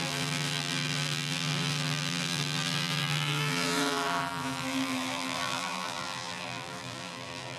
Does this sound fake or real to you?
fake